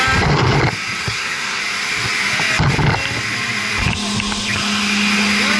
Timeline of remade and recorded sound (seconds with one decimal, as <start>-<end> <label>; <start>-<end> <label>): 0.0-1.0 recorded; 1.0-1.6 remade; 1.6-5.6 recorded